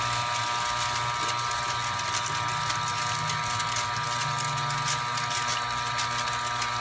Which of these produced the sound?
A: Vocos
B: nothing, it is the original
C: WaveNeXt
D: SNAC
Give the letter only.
B